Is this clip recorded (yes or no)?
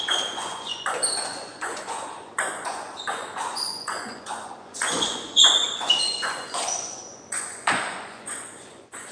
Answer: no